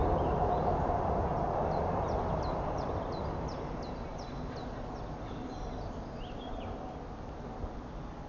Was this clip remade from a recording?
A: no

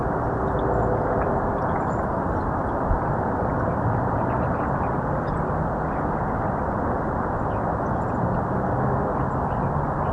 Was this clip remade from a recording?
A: no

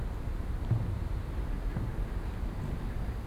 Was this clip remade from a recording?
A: no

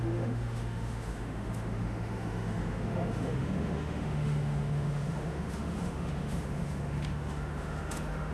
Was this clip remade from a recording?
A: yes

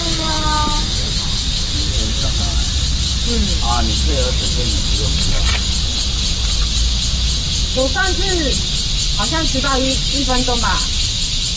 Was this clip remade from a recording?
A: no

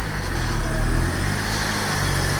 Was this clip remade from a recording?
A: no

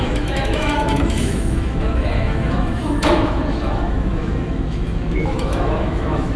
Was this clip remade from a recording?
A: yes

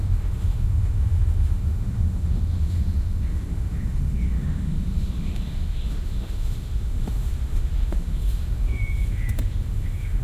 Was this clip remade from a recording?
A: yes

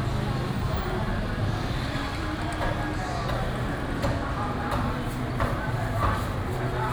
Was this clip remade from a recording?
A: no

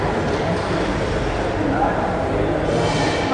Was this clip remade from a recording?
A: no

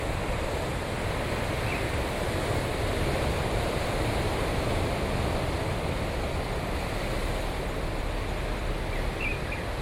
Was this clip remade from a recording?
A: no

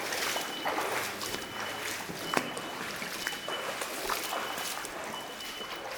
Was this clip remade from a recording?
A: no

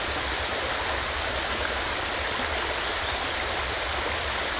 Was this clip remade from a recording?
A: no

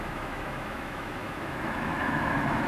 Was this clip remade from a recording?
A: yes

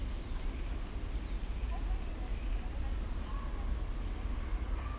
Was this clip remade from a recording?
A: no